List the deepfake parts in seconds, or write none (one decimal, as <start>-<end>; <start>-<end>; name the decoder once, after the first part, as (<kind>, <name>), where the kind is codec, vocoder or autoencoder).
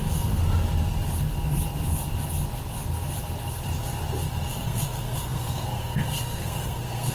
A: 0.0-0.4 (codec, SNAC); 4.5-7.1